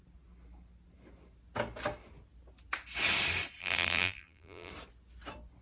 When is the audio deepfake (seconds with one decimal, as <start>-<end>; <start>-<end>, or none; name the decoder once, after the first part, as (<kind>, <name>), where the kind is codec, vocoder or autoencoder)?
3.6-4.7 (vocoder, BigVGAN v2)